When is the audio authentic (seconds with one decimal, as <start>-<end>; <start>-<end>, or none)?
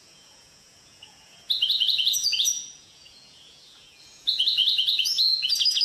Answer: none